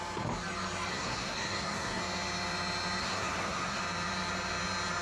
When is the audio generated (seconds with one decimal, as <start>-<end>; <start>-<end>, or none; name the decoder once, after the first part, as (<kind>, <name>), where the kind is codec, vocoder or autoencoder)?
0.9-2.0 (codec, SNAC); 3.0-3.8